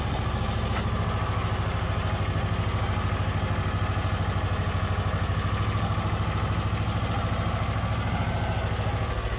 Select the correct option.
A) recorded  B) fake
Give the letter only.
A